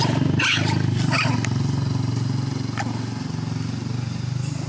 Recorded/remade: recorded